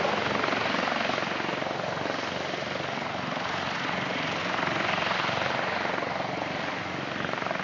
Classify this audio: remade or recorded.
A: recorded